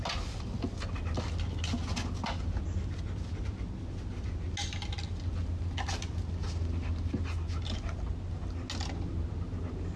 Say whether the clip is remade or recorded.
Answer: recorded